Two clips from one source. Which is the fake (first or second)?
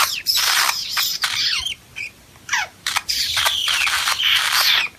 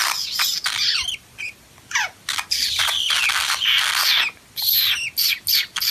first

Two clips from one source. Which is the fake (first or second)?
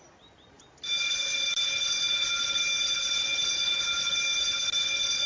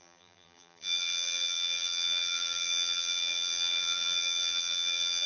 second